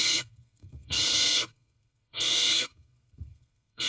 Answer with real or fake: fake